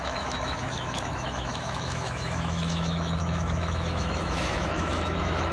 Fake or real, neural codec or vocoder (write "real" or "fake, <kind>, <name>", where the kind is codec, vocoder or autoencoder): fake, autoencoder, DAC-VAE